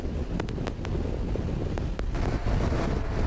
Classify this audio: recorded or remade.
recorded